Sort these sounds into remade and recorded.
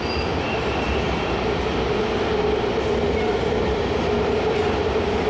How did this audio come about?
recorded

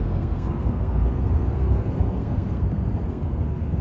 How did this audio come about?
remade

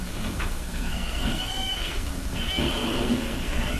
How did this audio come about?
remade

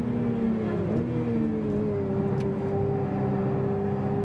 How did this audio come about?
recorded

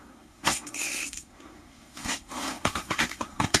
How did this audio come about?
remade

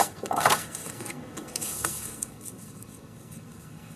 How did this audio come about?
remade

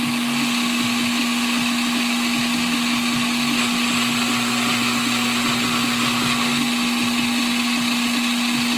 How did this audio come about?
recorded